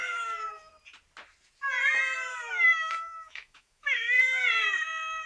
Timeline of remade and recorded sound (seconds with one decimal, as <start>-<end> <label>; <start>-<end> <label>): 0.0-0.7 remade; 0.7-2.3 recorded; 2.3-4.2 remade; 4.2-5.3 recorded